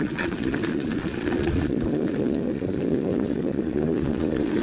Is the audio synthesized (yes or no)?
yes